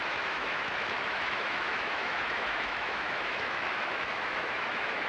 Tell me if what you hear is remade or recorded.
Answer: remade